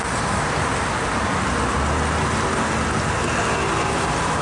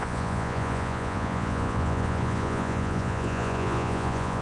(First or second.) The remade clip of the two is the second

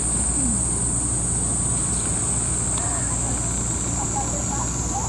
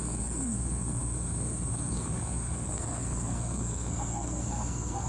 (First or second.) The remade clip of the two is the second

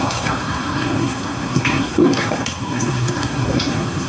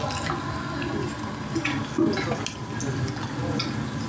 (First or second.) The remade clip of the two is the first